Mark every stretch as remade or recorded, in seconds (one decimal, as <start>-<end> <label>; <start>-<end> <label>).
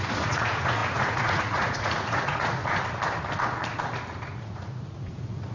0.0-2.6 remade; 2.6-4.4 recorded; 4.4-5.5 remade